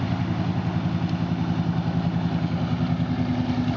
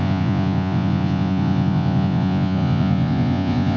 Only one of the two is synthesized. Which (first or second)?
second